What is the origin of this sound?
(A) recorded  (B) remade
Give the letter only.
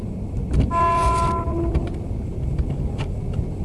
A